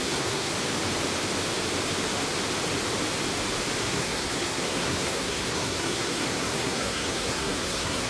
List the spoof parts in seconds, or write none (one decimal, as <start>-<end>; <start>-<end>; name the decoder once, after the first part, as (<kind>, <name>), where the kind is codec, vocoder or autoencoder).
0.0-0.5 (codec, SNAC); 3.8-8.1